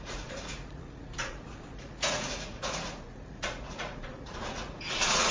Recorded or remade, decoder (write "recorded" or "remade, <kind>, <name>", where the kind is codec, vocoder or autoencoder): remade, vocoder, Vocos